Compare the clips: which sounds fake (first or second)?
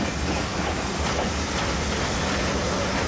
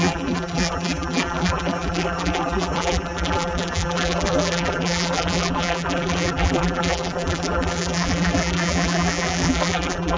second